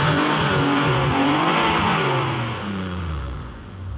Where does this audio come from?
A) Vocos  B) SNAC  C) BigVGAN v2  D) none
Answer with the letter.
A